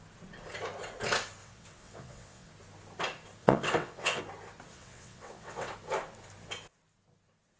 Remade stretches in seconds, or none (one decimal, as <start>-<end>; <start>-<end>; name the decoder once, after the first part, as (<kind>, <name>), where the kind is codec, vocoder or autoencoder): 1.4-2.5 (vocoder, WaveNeXt); 3.4-4.2; 4.7-5.7